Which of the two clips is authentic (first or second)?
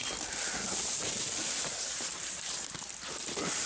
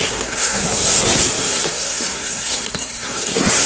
first